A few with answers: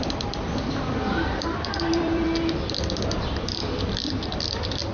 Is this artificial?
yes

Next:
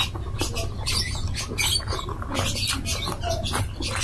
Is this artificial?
no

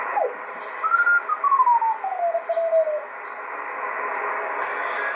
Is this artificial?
no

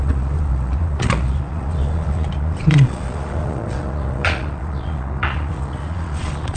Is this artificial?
yes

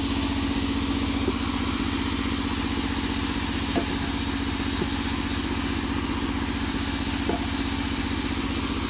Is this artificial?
no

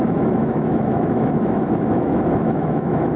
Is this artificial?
yes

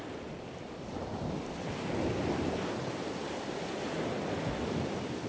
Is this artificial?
no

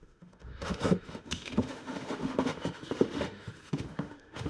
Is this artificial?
yes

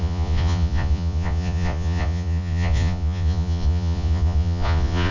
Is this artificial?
yes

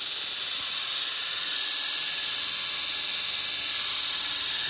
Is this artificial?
no